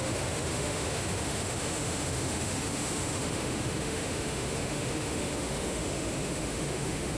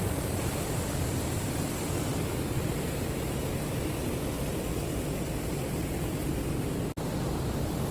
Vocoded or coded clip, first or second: first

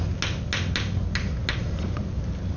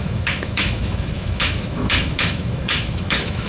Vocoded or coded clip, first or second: second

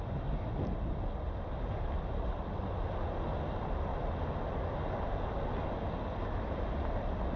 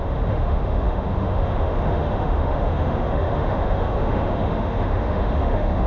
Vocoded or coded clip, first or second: second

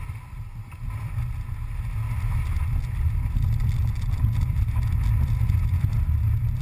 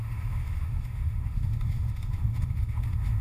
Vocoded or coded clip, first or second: second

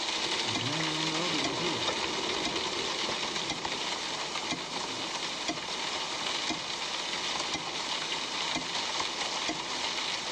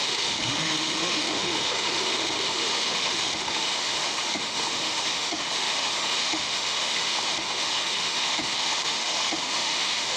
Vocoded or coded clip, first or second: second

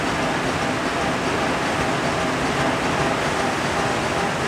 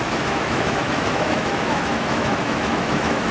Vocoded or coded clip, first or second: second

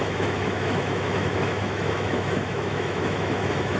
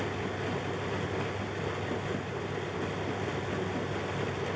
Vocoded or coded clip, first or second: first